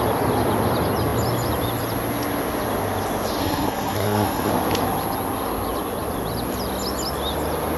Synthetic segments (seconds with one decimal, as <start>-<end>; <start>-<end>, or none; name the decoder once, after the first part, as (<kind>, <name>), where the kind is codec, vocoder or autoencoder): 3.4-4.5 (codec, SNAC)